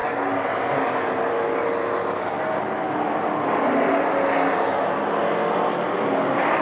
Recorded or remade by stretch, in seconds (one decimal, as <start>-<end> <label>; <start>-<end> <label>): 0.0-6.6 recorded